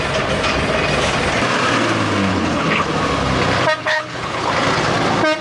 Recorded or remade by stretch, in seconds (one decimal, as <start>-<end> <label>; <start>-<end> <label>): 0.0-2.3 recorded; 2.3-2.9 remade; 2.9-3.8 recorded; 3.8-4.5 remade; 4.5-5.4 recorded